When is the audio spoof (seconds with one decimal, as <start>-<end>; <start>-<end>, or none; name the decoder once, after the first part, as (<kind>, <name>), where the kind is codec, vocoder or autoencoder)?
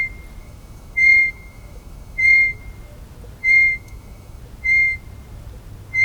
0.4-2.6 (autoencoder, DAC-VAE); 3.4-4.4